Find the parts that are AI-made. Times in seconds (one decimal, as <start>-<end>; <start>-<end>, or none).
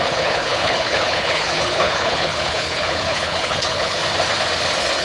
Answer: 0.0-4.0